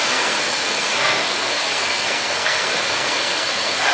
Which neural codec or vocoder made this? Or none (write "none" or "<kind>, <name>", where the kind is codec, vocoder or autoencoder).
codec, SNAC